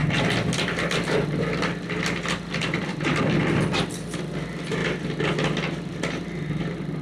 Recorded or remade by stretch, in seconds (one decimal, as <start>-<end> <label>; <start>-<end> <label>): 0.0-7.0 recorded